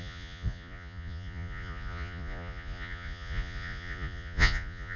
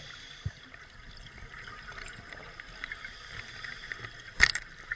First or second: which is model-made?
first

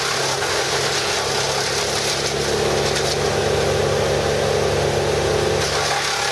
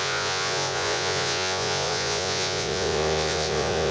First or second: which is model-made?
second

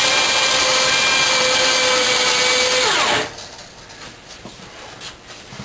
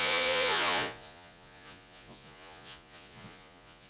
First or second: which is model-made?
second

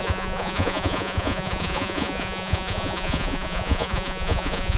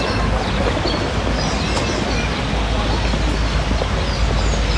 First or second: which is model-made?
first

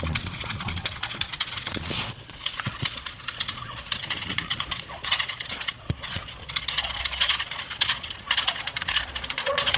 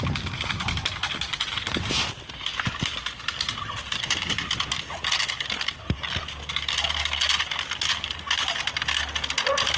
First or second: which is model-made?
first